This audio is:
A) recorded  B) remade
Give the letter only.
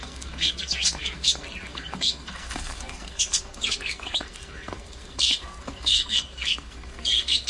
B